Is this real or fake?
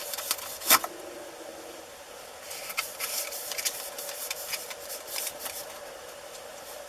fake